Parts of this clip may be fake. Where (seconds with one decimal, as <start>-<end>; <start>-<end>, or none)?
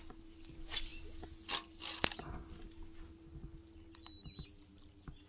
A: none